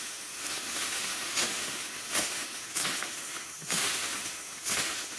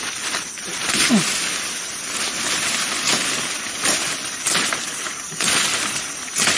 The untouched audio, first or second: second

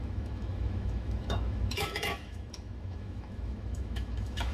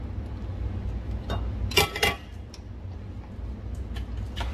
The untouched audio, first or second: second